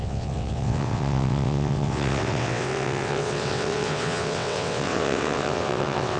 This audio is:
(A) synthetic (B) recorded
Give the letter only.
A